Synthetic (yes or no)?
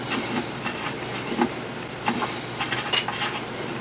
no